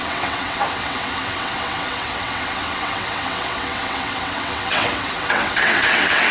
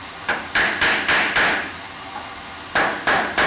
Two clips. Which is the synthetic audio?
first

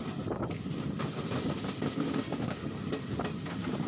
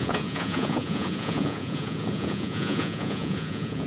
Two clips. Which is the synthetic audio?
second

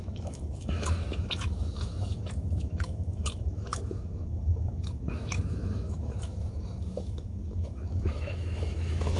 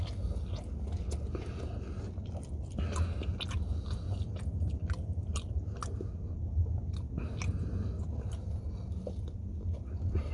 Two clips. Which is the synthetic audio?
first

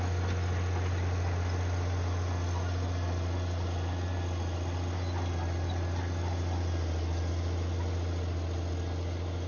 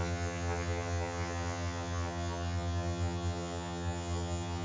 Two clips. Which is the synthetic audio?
second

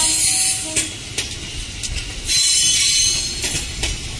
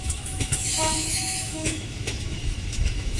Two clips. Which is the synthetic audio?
second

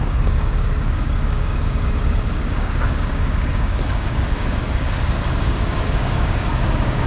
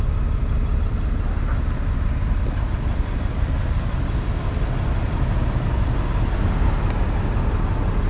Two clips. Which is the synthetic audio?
first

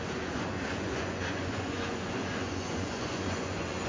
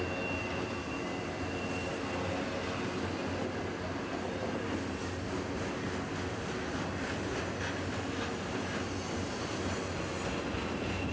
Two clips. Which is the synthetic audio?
first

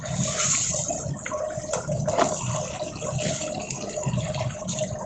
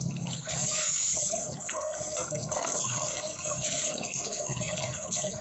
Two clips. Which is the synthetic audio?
second